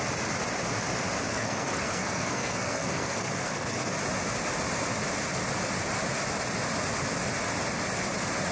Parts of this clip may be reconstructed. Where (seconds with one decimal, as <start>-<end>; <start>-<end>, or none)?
1.3-3.9